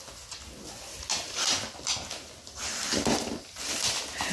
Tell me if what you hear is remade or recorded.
recorded